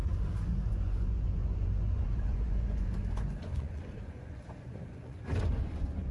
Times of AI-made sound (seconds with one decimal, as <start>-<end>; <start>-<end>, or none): 0.0-6.1